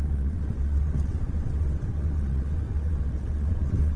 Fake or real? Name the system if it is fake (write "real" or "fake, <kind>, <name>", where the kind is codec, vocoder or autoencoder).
fake, vocoder, WaveNeXt